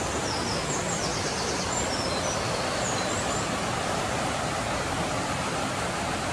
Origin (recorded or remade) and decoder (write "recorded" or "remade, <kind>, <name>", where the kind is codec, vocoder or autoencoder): recorded